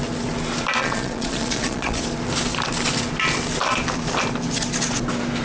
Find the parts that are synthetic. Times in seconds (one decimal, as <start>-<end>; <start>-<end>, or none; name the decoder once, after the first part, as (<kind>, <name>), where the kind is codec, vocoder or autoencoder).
0.8-2.0 (vocoder, Vocos)